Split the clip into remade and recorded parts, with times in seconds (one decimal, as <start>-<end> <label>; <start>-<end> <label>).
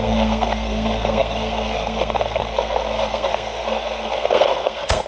0.0-5.1 remade